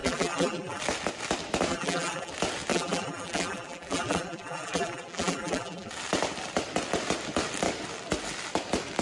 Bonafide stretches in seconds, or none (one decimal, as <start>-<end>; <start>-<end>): 0.8-1.7; 2.3-2.7; 5.9-9.0